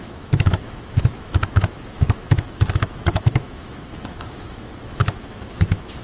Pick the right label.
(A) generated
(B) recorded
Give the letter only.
A